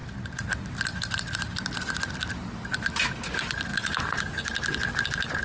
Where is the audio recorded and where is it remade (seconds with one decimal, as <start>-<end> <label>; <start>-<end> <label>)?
0.0-3.7 recorded; 3.7-4.4 remade; 4.4-5.4 recorded